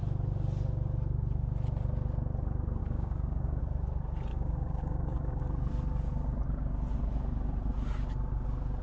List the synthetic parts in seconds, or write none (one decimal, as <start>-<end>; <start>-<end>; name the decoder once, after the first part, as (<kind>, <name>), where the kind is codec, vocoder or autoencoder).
2.8-3.6 (codec, DAC); 4.3-5.4